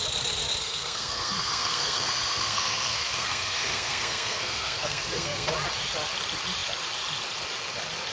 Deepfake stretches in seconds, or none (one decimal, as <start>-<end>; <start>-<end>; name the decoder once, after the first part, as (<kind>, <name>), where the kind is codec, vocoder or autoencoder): 0.6-5.5 (codec, SNAC)